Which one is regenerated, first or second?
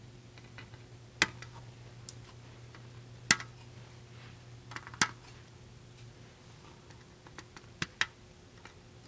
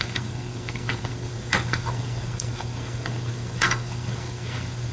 second